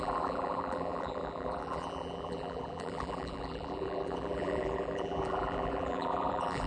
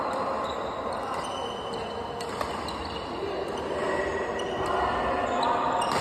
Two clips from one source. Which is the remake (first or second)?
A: first